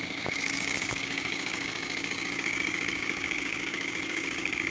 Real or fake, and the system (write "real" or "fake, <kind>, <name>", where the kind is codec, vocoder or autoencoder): fake, codec, DAC